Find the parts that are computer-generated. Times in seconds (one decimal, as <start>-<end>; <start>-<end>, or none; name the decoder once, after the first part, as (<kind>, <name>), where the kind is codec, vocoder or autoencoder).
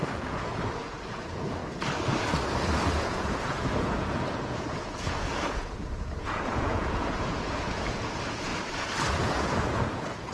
0.0-1.6 (vocoder, Vocos); 2.9-8.5; 9.1-10.3